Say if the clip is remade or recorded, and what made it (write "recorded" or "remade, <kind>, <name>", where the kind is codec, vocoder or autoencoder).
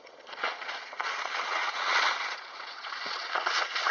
remade, vocoder, Vocos